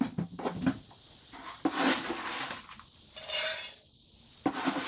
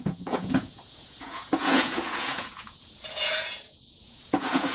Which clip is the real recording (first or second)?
first